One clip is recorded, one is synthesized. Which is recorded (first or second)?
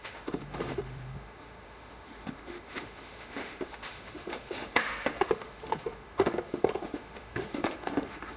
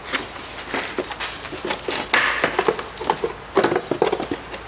second